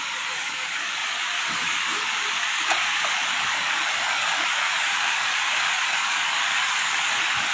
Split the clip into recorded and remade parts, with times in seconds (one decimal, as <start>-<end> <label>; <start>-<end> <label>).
0.0-7.5 remade